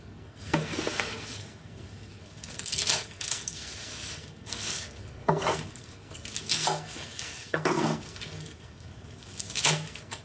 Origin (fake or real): fake